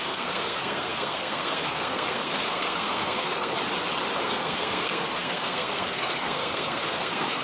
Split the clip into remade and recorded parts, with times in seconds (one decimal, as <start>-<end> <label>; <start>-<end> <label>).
0.0-3.5 remade; 3.5-4.2 recorded; 4.2-7.4 remade

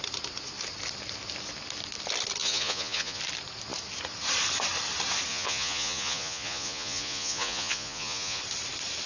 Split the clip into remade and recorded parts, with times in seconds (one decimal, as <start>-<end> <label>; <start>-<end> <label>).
0.0-2.4 recorded; 2.4-3.2 remade; 3.2-5.3 recorded; 5.3-8.4 remade; 8.4-9.1 recorded

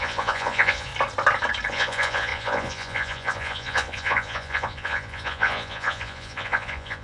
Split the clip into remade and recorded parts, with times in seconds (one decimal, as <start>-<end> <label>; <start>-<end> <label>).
0.0-0.9 remade; 0.9-1.7 recorded; 1.7-7.0 remade

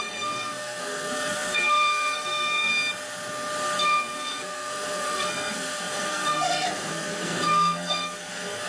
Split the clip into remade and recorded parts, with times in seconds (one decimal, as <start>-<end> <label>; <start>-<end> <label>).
0.0-2.7 remade; 2.7-3.8 recorded; 3.8-8.7 remade

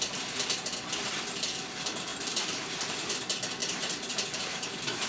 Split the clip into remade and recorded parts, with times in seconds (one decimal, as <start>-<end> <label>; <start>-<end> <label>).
0.0-2.1 recorded; 2.1-3.1 remade; 3.1-3.6 recorded; 3.6-5.1 remade

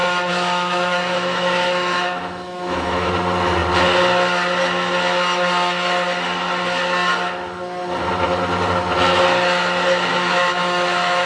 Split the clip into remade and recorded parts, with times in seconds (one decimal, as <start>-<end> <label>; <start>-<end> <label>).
0.0-3.1 remade; 3.1-10.1 recorded; 10.1-11.3 remade

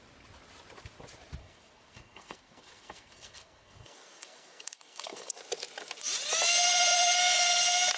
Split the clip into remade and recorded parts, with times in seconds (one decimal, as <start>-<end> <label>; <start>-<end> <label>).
0.0-1.4 recorded; 1.4-5.3 remade; 5.3-8.0 recorded

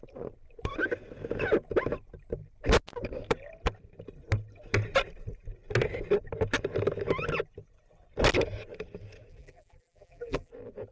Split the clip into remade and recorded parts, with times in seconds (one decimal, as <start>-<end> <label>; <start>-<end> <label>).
0.0-9.3 recorded; 9.3-10.5 remade; 10.5-10.9 recorded